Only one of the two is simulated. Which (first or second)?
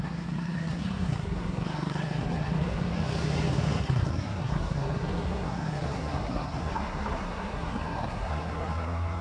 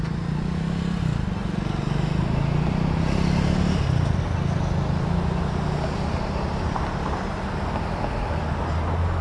first